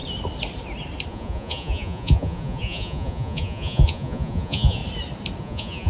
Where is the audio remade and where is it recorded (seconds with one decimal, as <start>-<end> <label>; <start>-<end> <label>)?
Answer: 0.0-1.1 recorded; 1.1-4.8 remade; 4.8-5.4 recorded; 5.4-5.9 remade